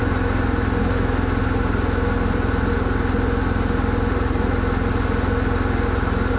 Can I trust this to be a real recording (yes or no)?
yes